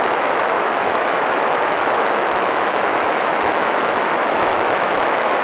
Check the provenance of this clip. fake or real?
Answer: fake